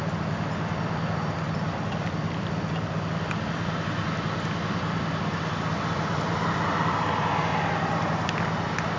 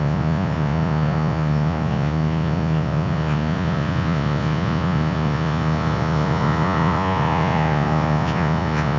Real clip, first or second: first